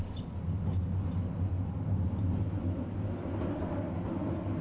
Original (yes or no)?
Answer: yes